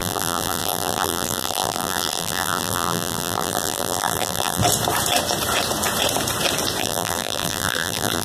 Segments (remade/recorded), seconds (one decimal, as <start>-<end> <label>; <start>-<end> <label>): 0.0-4.6 remade; 4.6-6.8 recorded; 6.8-8.2 remade